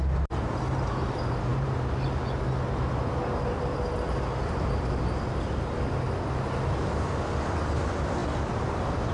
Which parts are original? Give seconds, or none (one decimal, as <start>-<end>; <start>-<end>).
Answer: 0.0-9.1